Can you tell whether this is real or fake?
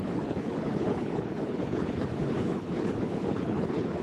fake